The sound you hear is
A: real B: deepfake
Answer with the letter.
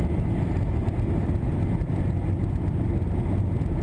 A